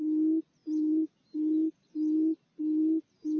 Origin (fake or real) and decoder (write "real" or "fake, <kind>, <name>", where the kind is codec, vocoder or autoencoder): real